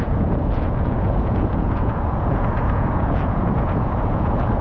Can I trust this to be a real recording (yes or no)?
no